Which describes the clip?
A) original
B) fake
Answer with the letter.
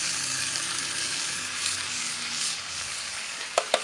B